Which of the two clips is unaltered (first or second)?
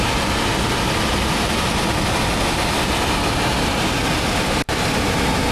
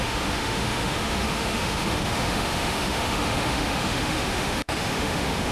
first